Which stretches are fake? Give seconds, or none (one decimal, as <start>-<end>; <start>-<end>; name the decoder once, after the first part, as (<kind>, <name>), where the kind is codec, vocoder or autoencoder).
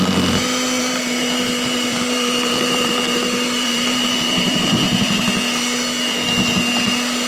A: 0.8-5.2 (vocoder, BigVGAN v2)